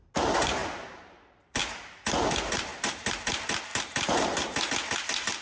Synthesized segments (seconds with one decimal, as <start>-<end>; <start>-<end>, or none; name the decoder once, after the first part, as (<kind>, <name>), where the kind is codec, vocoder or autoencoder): 0.6-1.6 (vocoder, BigVGAN v2); 2.7-3.2; 3.7-4.7